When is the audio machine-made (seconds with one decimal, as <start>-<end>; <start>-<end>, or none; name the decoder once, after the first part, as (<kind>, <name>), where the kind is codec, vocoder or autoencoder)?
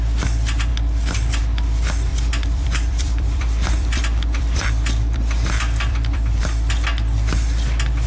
2.1-6.4 (vocoder, BigVGAN v2)